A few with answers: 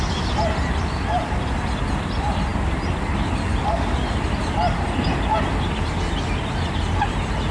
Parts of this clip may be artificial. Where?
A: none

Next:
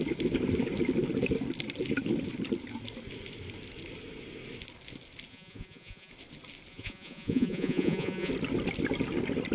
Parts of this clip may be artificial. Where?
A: 5.3-6.1 (vocoder, Vocos); 6.7-8.3

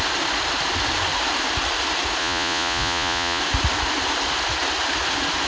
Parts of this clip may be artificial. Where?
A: 2.2-3.4 (vocoder, Vocos)

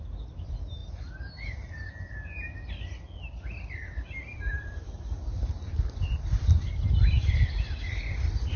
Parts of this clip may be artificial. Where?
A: none